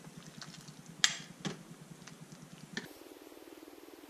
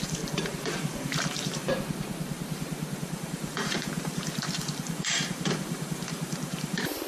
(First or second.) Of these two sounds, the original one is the first